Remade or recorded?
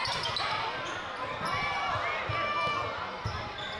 recorded